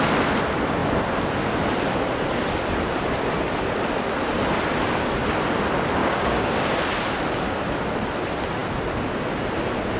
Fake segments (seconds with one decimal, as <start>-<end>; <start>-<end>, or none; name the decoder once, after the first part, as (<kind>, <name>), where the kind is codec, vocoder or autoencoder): 6.0-6.7 (codec, DAC)